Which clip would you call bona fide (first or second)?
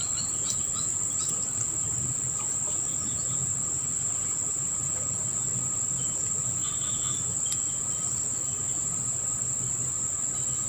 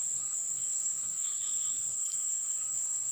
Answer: first